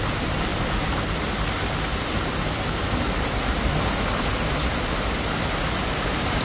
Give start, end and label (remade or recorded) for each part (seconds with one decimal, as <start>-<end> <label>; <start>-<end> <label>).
0.0-6.4 recorded